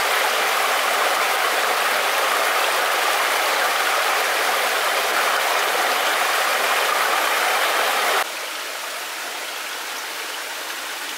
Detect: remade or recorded recorded